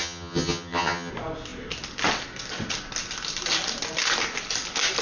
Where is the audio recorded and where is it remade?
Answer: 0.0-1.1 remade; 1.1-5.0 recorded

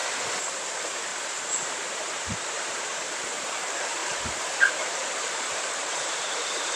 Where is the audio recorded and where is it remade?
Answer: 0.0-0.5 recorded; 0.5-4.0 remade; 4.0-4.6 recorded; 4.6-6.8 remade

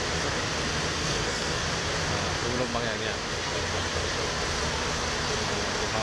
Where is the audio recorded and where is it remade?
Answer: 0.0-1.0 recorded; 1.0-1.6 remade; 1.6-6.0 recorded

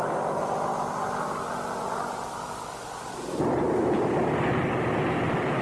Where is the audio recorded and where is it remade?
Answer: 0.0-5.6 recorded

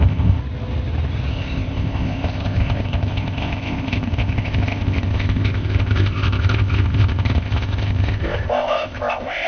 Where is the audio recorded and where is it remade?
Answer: 0.0-0.4 remade; 0.4-1.3 recorded; 1.3-9.5 remade

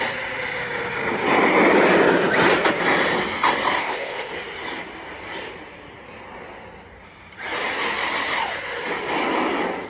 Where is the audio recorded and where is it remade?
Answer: 0.0-3.8 recorded; 3.8-4.3 remade; 4.3-9.9 recorded

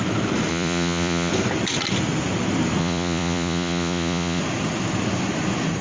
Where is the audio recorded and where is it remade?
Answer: 0.0-0.5 recorded; 0.5-1.3 remade; 1.3-2.8 recorded; 2.8-4.4 remade; 4.4-5.8 recorded